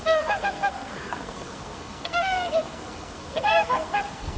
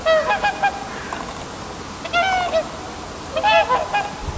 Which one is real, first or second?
second